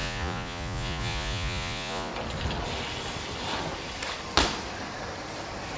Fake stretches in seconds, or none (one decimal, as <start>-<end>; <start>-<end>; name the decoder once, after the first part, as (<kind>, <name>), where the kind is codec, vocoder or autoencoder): 0.0-2.1 (vocoder, Vocos)